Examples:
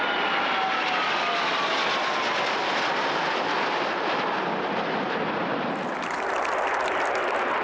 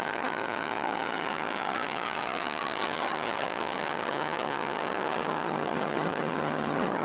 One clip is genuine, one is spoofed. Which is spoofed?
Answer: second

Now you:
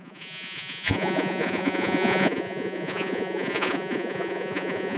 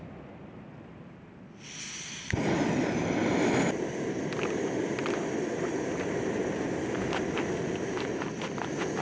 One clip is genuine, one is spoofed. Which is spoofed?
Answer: first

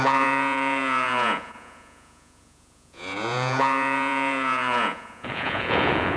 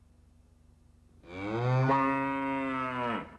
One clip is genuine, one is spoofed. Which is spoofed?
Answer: first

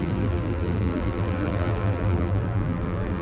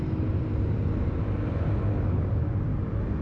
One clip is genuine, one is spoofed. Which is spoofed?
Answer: first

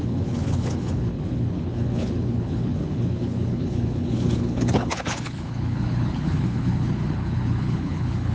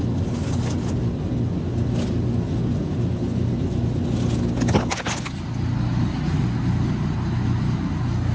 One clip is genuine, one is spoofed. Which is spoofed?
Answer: first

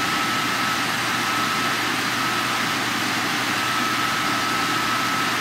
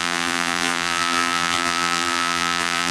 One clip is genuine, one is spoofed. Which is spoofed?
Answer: second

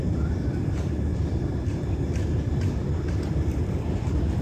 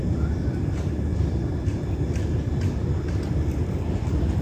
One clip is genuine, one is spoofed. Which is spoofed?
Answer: first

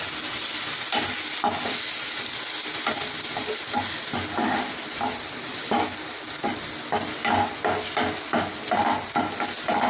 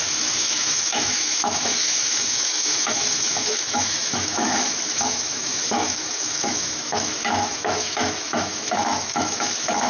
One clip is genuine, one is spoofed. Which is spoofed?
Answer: second